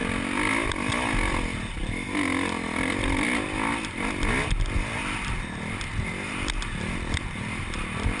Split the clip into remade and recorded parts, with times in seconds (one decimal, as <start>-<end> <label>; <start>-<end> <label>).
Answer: 0.0-8.2 recorded